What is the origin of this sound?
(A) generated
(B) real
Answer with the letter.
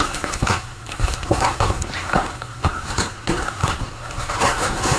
A